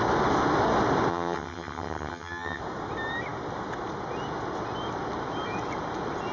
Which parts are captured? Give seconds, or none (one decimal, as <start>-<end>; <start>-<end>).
0.0-1.1; 2.6-6.3